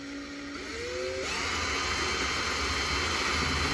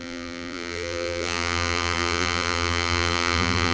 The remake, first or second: second